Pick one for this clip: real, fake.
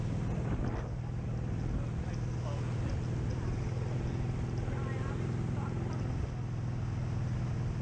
real